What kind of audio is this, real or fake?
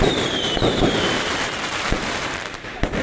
fake